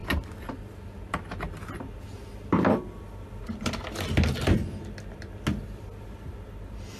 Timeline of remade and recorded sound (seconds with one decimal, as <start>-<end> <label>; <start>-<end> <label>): 0.0-7.0 recorded